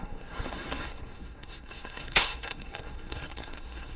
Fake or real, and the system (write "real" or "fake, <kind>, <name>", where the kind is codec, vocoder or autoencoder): fake, codec, SNAC